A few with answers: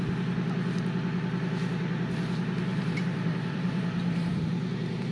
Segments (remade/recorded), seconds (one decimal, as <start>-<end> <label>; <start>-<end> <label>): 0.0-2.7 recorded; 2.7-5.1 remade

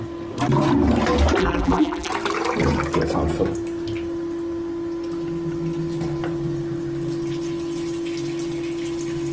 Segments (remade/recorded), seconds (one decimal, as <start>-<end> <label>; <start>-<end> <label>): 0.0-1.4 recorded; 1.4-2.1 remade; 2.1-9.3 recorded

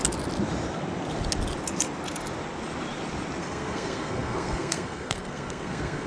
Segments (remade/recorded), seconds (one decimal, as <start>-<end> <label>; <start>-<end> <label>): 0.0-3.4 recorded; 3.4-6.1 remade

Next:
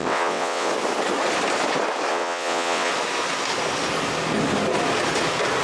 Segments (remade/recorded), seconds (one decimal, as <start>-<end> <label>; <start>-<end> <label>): 0.0-0.7 remade; 0.7-2.1 recorded; 2.1-2.9 remade; 2.9-5.6 recorded